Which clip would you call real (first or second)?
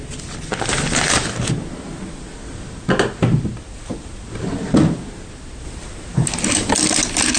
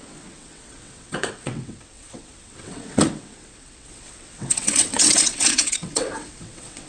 first